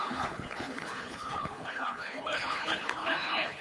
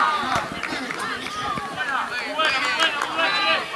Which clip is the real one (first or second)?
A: second